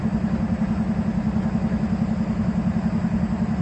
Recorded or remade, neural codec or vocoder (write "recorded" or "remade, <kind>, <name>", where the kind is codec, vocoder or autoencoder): recorded